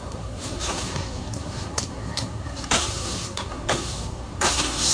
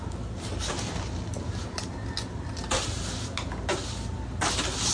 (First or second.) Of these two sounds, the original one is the second